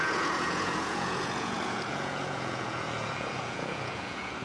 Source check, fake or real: fake